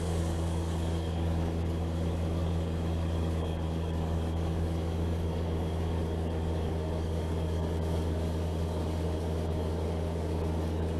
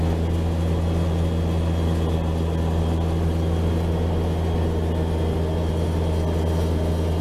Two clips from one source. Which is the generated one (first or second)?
first